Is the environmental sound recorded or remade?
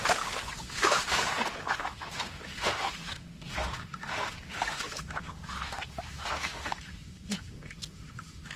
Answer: remade